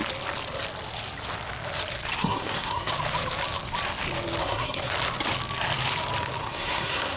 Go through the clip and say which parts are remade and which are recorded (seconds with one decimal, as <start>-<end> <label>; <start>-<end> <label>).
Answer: 0.0-2.2 recorded; 2.2-2.9 remade; 2.9-4.4 recorded; 4.4-4.9 remade; 4.9-6.4 recorded; 6.4-7.2 remade